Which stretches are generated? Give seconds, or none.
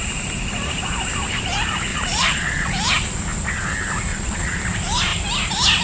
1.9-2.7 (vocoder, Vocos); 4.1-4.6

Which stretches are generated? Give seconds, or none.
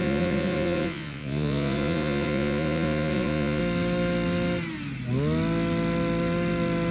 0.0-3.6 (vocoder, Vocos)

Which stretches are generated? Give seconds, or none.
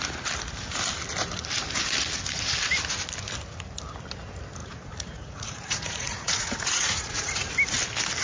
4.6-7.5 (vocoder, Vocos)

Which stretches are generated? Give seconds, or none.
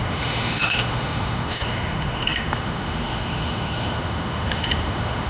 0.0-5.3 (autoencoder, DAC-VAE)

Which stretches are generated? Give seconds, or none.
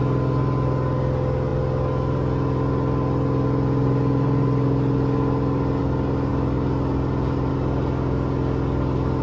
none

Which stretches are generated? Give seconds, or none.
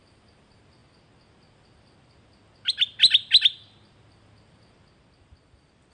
none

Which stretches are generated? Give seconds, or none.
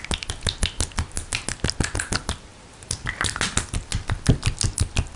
none